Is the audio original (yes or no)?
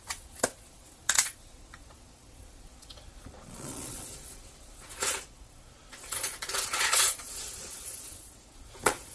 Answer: no